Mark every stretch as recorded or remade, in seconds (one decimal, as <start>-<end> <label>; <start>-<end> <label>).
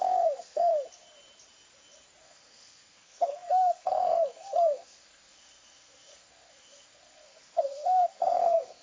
0.0-0.7 remade; 0.7-2.2 recorded; 2.2-8.8 remade